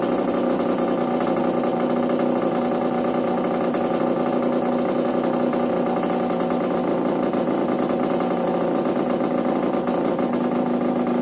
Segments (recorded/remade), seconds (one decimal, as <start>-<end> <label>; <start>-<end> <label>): 0.0-11.2 recorded